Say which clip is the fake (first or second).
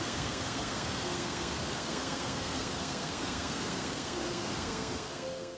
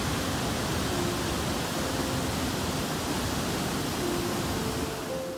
first